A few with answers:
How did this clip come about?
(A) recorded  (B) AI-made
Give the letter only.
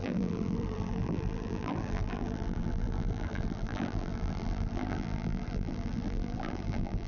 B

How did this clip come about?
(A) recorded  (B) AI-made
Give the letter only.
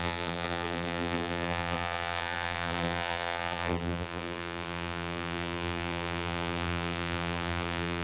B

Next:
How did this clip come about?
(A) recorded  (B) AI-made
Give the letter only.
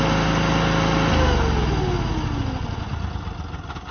A